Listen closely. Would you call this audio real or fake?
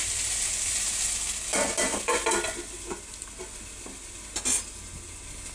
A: real